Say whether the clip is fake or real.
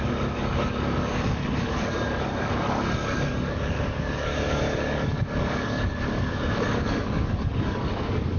fake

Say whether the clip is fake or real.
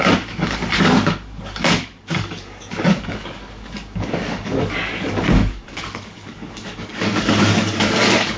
fake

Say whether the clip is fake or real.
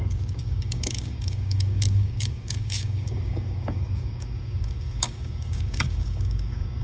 fake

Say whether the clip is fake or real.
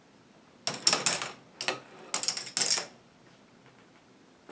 real